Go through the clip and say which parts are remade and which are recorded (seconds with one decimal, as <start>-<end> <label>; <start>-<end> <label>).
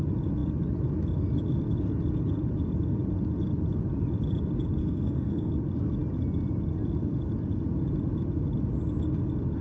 0.0-4.8 recorded; 4.8-5.5 remade; 5.5-9.6 recorded